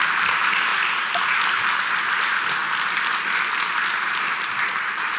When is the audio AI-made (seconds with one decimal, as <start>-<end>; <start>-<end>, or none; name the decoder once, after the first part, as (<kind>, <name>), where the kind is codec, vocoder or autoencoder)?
0.0-2.6 (vocoder, BigVGAN v2); 3.7-5.2